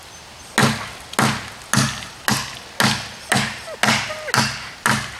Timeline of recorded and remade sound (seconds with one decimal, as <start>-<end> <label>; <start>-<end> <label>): 0.0-5.2 recorded